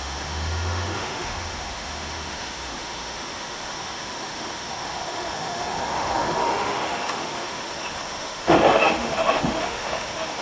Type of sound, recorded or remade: remade